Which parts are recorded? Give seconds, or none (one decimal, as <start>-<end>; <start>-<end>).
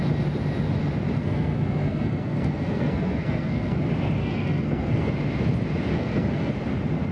0.0-1.2; 3.8-4.2; 5.1-5.9; 6.5-7.1